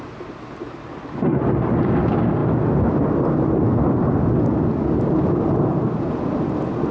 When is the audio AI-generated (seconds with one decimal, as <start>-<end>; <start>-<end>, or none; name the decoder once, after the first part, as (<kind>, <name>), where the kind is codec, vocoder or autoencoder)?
none